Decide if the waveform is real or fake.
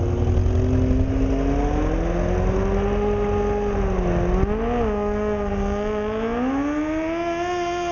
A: real